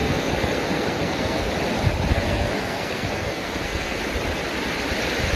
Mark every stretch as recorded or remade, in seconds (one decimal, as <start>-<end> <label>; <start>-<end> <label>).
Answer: 0.0-1.5 remade; 1.5-2.1 recorded; 2.1-4.0 remade; 4.0-5.4 recorded